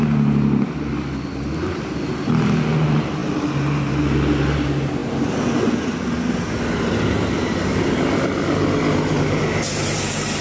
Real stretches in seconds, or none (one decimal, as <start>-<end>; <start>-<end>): 0.0-10.4